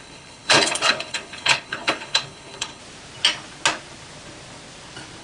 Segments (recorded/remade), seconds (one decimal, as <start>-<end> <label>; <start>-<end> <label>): 0.0-2.8 remade; 2.8-5.2 recorded